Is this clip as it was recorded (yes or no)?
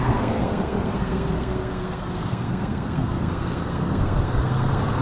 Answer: no